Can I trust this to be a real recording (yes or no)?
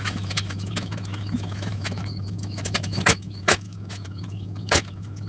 no